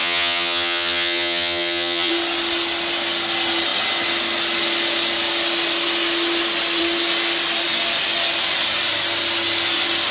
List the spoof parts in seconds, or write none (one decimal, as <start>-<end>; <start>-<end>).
0.0-2.1